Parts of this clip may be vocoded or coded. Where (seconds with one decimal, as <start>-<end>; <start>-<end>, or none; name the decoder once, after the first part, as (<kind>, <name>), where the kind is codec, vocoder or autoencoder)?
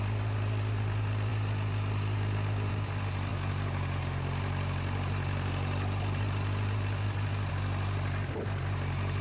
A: none